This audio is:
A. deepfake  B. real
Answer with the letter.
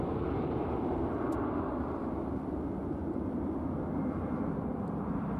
A